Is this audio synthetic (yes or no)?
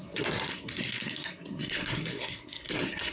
yes